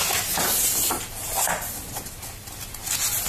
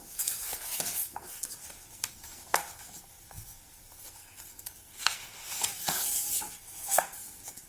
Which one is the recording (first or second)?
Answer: first